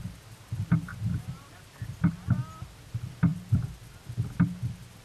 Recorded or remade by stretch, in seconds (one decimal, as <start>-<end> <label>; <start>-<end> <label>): 0.0-0.9 recorded; 0.9-2.1 remade; 2.1-5.0 recorded